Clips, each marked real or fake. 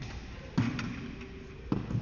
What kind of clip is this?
real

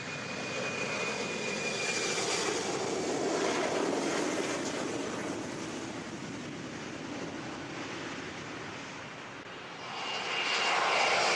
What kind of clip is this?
real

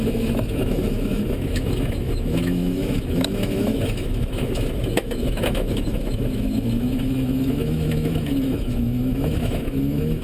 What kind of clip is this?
fake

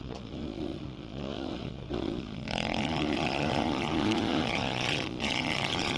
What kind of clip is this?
fake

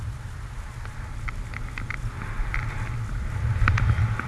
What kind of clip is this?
real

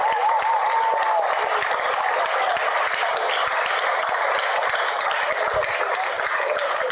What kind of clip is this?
real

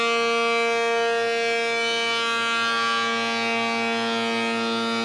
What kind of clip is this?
real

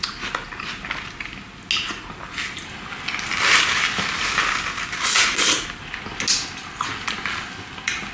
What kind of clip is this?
real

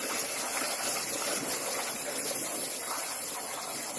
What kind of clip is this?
real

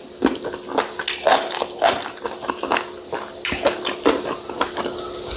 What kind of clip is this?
real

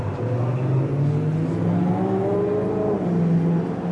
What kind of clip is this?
real